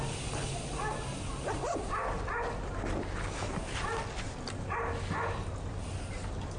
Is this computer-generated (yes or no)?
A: no